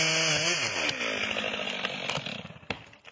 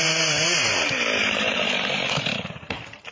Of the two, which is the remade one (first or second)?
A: second